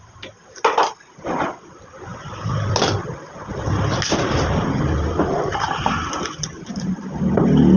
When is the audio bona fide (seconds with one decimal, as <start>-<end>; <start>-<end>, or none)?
0.0-7.8

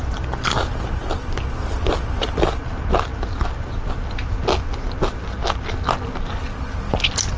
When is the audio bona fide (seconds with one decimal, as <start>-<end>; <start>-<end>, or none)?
0.0-7.4